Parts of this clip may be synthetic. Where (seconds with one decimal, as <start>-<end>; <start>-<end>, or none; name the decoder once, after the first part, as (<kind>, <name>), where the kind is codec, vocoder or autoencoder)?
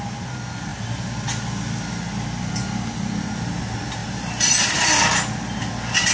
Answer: none